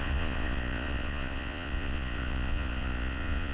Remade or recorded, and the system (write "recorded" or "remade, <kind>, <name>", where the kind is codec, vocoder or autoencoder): remade, vocoder, Vocos